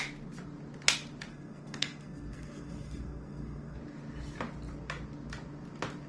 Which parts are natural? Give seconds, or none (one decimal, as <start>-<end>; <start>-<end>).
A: 0.0-1.3; 3.8-6.1